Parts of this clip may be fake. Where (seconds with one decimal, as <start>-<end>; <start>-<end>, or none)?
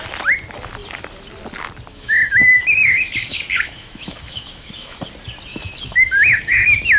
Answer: 1.9-5.0; 5.5-7.0